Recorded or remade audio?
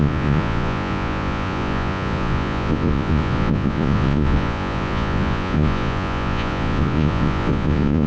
remade